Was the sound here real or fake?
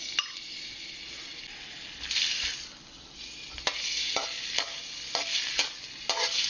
real